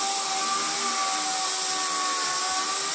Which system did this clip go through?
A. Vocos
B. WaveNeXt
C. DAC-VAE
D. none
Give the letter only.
D